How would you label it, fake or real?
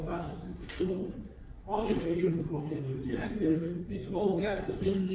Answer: fake